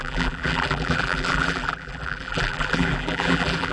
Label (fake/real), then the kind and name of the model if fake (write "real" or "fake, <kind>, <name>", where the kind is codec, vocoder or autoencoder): fake, vocoder, BigVGAN v2